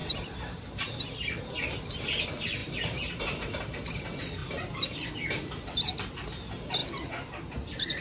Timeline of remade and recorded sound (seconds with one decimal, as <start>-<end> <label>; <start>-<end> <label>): 0.0-1.8 remade; 1.8-2.6 recorded; 2.6-3.4 remade; 3.4-4.4 recorded; 4.4-5.1 remade; 5.1-8.0 recorded